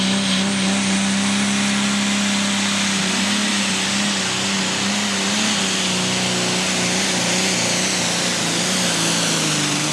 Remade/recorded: recorded